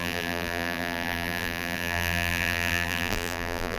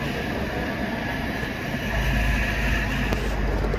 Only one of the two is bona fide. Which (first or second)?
second